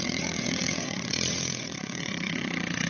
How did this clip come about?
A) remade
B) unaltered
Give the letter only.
A